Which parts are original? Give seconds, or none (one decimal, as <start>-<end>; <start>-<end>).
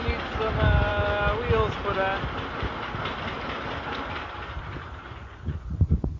0.0-5.0